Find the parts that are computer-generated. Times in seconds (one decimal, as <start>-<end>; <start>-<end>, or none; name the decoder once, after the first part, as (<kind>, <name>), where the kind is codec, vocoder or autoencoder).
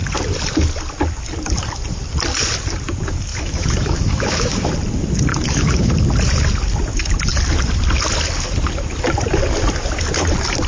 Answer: 3.3-4.7 (autoencoder, DAC-VAE); 5.3-5.9